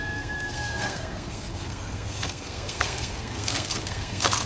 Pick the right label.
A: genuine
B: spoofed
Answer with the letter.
B